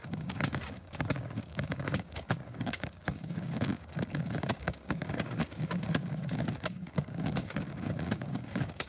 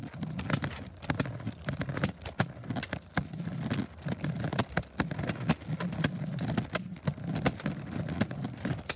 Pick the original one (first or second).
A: second